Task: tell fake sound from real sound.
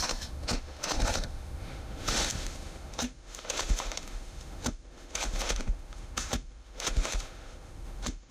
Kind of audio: fake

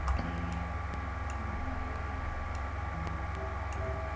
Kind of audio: real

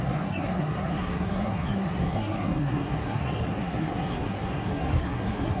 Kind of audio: fake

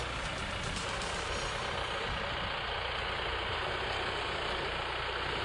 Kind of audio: real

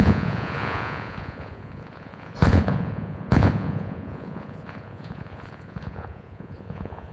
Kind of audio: fake